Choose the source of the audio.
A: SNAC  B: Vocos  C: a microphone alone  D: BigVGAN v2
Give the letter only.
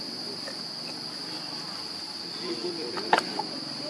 C